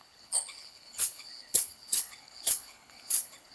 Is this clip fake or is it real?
fake